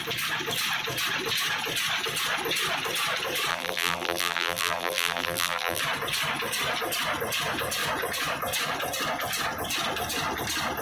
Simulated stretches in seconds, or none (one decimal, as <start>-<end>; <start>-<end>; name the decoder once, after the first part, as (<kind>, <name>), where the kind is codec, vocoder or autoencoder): 3.5-5.8 (vocoder, BigVGAN v2)